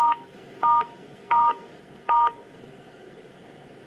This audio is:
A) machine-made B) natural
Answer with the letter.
A